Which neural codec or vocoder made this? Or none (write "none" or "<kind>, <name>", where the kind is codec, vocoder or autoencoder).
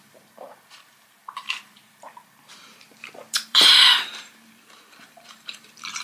vocoder, BigVGAN v2